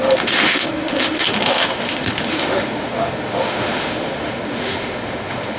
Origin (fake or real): fake